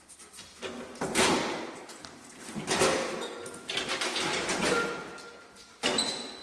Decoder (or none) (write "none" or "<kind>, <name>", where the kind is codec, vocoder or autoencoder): none